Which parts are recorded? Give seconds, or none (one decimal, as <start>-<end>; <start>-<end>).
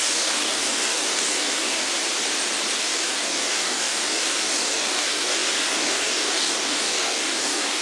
1.9-2.8